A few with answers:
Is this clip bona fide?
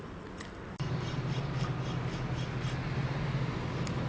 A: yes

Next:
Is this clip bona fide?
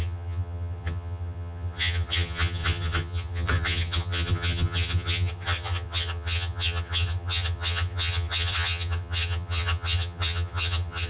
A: no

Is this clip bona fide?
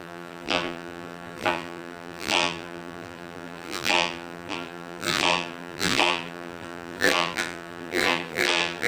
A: no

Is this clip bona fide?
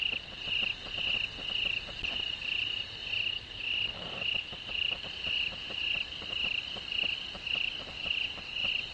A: yes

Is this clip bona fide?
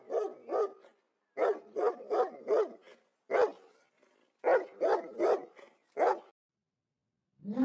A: yes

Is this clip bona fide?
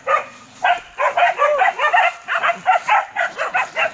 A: yes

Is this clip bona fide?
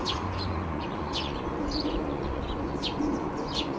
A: no